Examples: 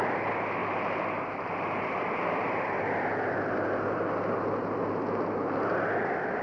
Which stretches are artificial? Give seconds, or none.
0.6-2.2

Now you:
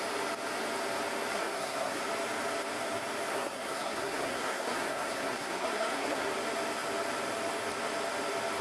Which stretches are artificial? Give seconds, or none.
1.3-2.0; 3.3-6.3